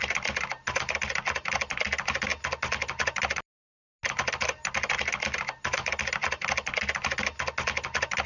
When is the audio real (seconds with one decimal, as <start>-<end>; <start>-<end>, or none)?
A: 0.0-8.3